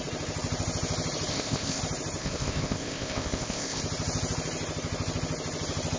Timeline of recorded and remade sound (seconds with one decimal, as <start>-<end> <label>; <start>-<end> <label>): 0.0-1.3 recorded; 1.3-1.8 remade; 1.8-2.2 recorded; 2.2-3.8 remade; 3.8-6.0 recorded